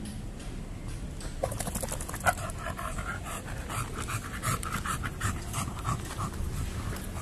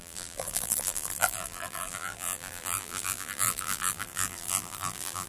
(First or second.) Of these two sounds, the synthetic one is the second